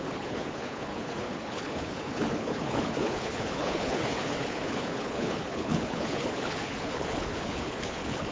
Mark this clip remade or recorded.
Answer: remade